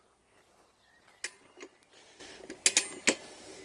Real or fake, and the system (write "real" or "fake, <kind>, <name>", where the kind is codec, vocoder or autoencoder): real